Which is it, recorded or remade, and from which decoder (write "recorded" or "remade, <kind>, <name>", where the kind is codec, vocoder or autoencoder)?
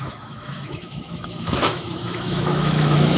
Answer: remade, autoencoder, DAC-VAE